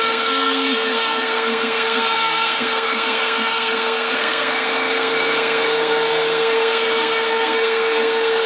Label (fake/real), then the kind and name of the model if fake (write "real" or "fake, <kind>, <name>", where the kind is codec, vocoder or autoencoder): fake, codec, SNAC